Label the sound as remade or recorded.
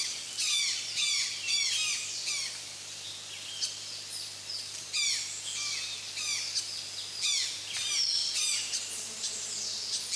recorded